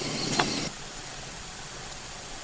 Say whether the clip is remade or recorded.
remade